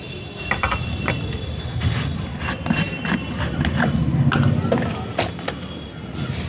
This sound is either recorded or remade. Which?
recorded